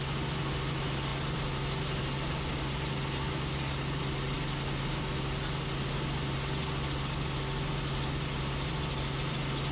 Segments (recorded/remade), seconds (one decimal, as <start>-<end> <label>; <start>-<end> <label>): 0.0-9.7 recorded